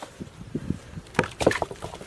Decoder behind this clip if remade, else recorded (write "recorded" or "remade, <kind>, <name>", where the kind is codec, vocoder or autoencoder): remade, vocoder, BigVGAN v2